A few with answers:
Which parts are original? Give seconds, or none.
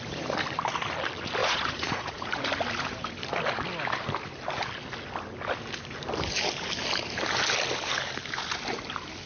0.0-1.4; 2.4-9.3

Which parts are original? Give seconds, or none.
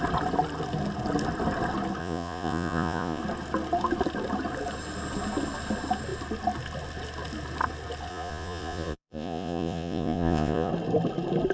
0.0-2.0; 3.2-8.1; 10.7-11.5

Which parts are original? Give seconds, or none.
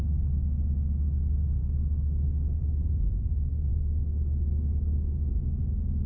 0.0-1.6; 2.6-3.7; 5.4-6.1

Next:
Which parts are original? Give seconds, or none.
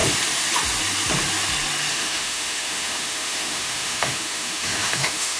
0.0-1.9